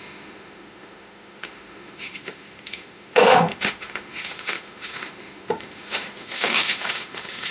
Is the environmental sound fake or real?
fake